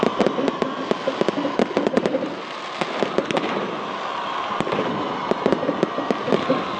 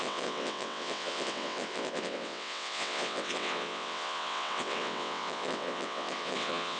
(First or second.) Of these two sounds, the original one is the first